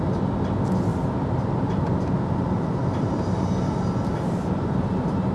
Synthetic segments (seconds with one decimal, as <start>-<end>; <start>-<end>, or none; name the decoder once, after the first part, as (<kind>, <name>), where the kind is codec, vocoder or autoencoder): none